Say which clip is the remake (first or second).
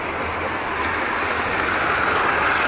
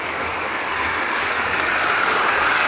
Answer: second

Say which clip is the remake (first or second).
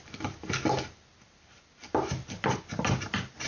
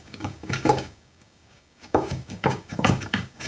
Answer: second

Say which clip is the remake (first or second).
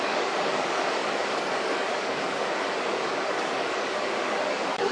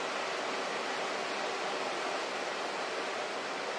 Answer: first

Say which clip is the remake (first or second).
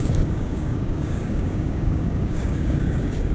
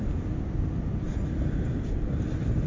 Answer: first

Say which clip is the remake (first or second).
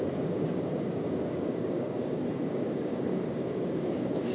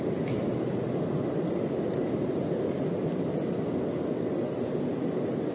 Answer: first